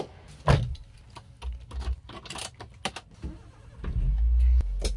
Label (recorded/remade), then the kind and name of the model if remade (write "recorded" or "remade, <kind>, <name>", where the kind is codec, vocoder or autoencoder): recorded